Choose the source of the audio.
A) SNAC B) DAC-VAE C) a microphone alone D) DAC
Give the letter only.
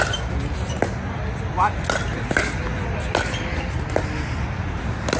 C